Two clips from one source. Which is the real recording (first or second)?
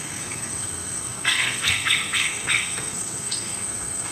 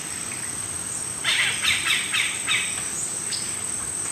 second